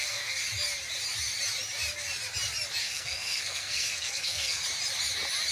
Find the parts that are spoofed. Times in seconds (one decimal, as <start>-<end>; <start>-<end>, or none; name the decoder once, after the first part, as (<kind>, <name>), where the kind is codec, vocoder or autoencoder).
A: 0.0-0.4 (codec, SNAC); 2.8-4.6